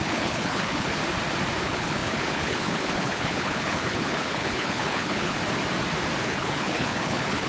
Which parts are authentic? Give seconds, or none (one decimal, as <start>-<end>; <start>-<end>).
1.0-1.6; 5.4-6.2